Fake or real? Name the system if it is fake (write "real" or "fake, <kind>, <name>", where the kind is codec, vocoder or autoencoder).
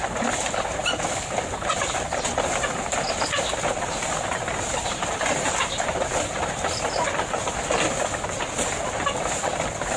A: real